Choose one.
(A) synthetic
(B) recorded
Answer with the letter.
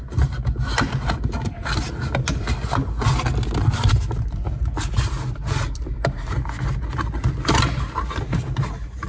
B